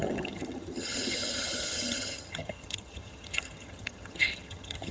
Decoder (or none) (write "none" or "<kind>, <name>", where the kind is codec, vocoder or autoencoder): vocoder, HiFi-GAN